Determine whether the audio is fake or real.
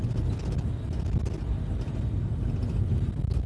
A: real